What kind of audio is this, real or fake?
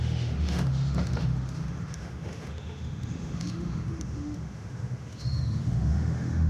fake